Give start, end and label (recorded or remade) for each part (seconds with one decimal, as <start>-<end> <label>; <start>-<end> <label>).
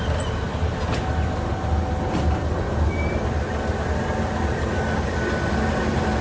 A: 0.0-6.2 recorded